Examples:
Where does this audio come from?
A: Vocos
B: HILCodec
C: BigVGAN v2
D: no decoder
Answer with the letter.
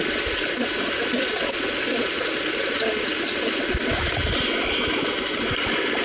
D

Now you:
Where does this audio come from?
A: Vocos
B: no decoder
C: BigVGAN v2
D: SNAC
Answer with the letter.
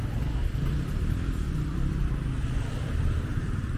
C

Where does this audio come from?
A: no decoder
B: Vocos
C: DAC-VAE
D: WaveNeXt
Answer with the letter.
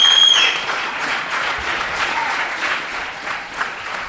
B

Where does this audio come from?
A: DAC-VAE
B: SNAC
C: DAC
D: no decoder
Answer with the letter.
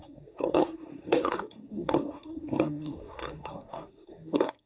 B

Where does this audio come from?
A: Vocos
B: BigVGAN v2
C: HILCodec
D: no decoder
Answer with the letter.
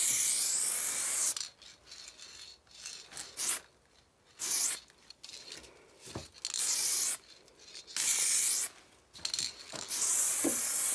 D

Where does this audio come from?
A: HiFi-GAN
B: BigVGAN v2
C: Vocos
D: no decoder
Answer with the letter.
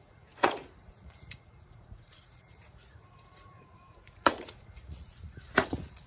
C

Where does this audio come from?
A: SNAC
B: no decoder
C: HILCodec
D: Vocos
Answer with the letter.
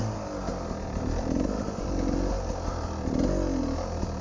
B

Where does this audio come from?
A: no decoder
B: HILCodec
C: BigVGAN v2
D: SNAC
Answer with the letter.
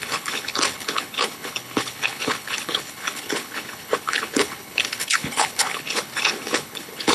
B